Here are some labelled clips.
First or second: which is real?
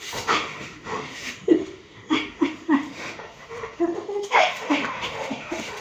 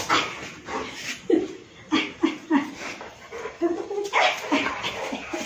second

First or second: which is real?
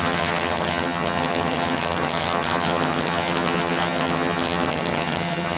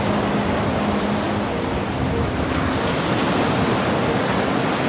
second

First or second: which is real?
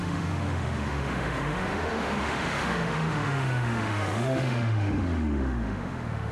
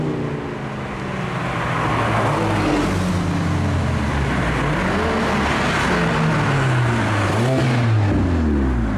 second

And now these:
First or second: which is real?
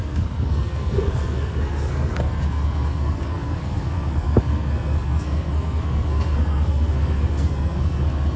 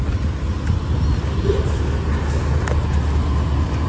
second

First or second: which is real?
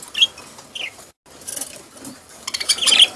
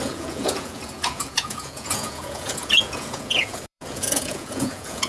first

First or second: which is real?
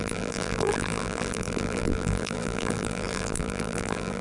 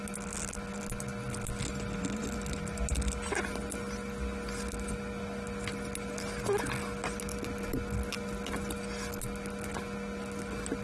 second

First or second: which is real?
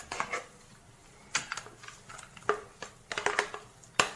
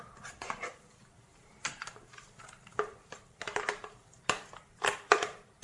first